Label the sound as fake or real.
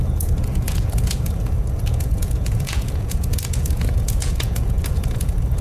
fake